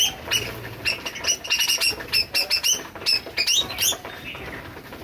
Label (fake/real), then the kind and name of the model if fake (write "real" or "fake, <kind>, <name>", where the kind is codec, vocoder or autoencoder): real